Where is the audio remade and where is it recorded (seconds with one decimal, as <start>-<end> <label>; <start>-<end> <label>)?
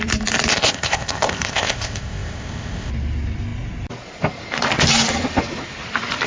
0.0-0.5 recorded; 0.5-2.9 remade; 2.9-6.3 recorded